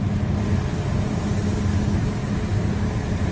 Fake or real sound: real